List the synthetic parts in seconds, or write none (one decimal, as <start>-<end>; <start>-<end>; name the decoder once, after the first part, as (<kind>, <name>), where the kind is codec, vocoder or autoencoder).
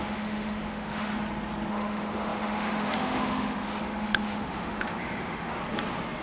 0.0-1.1 (autoencoder, DAC-VAE); 1.7-5.6